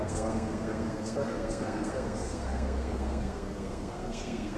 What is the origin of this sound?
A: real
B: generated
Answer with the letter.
B